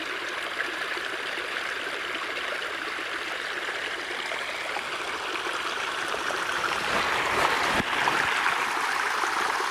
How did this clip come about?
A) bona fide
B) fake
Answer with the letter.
A